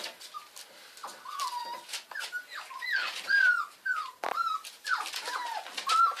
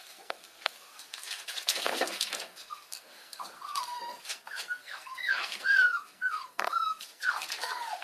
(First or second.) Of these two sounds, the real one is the first